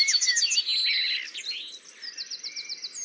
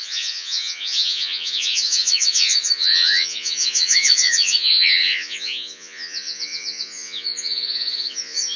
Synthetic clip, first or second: second